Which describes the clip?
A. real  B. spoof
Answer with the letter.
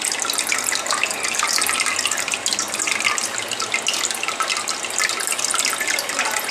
A